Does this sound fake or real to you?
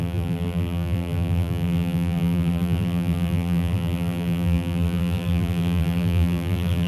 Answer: fake